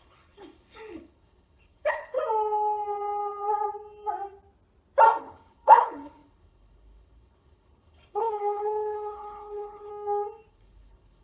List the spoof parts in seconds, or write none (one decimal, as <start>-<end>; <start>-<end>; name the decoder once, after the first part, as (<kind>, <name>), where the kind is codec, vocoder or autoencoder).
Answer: 0.0-2.2 (codec, HILCodec); 5.2-9.9; 10.5-11.2